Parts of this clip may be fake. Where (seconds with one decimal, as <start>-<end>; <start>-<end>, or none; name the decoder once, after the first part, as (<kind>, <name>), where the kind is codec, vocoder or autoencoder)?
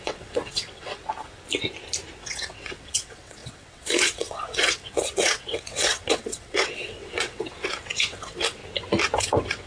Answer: 0.0-1.0 (vocoder, WaveNeXt); 2.2-8.6; 9.2-9.7